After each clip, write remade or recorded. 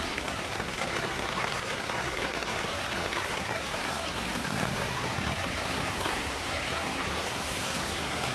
remade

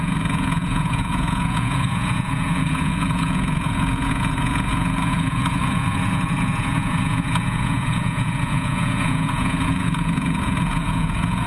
remade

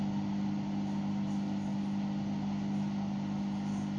recorded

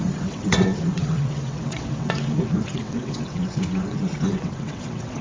remade